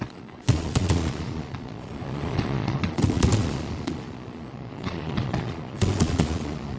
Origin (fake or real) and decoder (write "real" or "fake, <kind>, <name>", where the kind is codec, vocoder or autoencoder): fake, vocoder, Vocos